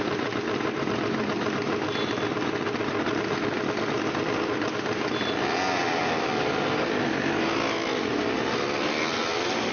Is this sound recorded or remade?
recorded